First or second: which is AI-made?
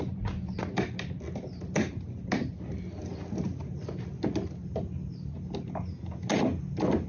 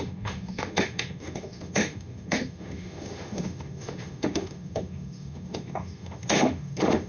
second